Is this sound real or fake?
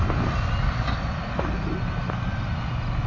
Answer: real